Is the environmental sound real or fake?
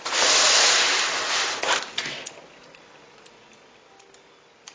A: real